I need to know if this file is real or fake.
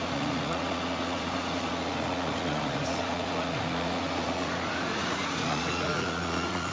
fake